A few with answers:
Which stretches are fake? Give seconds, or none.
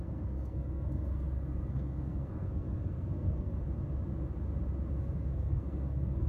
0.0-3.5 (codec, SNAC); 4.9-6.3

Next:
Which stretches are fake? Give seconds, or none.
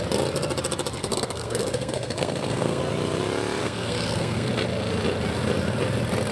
1.0-2.8 (codec, SNAC); 3.6-4.5